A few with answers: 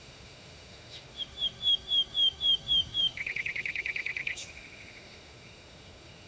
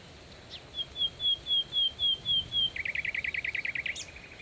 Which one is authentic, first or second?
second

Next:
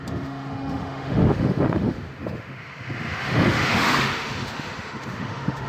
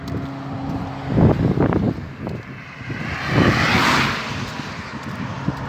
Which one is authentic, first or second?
second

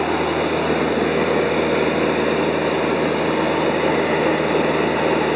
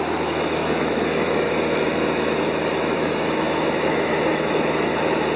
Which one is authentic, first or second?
first